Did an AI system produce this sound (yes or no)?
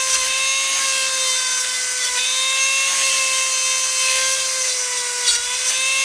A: no